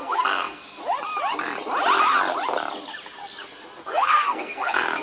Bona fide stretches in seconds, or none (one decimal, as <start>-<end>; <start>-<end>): 0.8-3.8